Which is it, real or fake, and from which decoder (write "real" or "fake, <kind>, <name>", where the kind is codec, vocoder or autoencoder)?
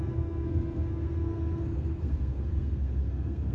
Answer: fake, codec, SNAC